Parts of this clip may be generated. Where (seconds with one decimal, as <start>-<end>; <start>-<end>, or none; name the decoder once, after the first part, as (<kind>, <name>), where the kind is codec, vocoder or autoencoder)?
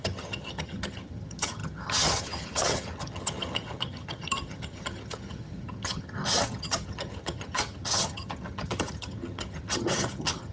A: 0.0-10.5 (vocoder, HiFi-GAN)